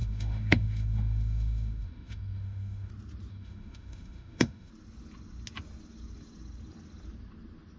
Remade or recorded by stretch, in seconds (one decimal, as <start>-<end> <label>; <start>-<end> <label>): 0.0-2.9 remade; 2.9-3.3 recorded; 3.3-4.7 remade; 4.7-7.8 recorded